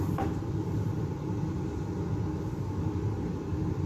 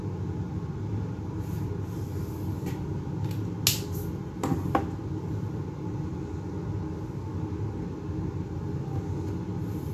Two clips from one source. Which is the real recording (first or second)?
second